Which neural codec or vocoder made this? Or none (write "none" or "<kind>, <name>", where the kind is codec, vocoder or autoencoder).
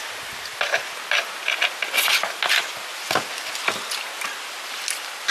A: none